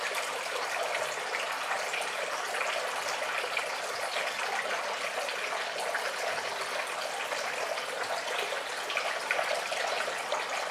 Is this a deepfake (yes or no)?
no